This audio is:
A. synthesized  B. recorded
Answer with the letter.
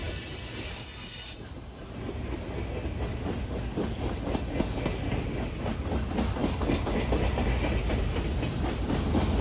B